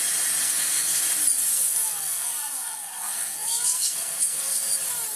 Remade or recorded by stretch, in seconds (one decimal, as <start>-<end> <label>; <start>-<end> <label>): 0.0-0.4 recorded; 0.4-1.0 remade; 1.0-1.5 recorded; 1.5-4.6 remade; 4.6-5.2 recorded